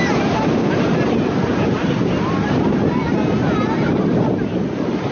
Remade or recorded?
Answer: recorded